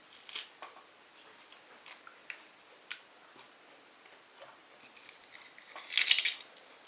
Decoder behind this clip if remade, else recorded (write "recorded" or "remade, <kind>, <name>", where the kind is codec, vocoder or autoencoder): recorded